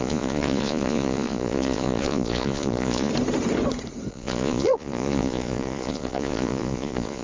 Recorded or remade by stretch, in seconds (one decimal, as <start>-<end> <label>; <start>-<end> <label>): 0.0-3.1 remade; 3.1-4.1 recorded; 4.1-7.2 remade